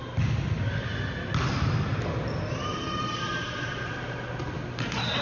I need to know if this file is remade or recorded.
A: recorded